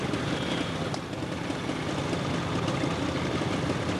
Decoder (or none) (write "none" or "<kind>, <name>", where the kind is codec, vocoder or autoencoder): none